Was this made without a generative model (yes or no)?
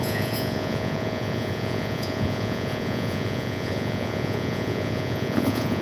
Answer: no